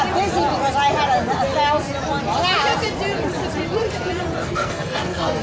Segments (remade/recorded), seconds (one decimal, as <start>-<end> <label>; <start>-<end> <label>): 0.0-4.4 recorded; 4.4-5.4 remade